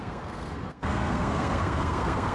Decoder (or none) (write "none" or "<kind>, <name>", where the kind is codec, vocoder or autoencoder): codec, SNAC